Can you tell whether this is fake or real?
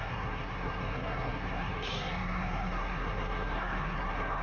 fake